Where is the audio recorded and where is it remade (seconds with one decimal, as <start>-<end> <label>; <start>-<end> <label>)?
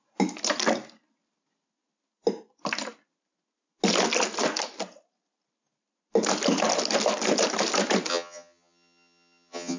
0.0-8.1 recorded; 8.1-9.8 remade